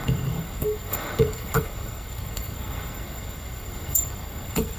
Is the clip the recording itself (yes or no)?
no